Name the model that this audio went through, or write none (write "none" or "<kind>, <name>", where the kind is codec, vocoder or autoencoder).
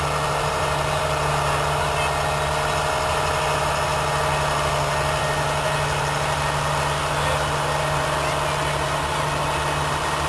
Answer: none